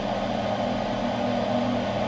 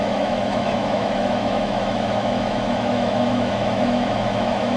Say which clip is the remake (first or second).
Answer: second